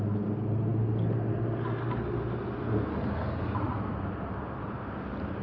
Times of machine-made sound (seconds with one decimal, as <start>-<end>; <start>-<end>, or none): none